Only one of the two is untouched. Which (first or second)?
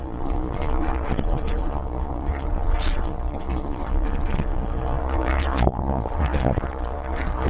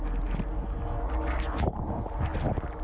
second